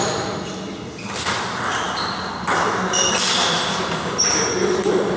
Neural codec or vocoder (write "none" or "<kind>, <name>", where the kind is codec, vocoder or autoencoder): none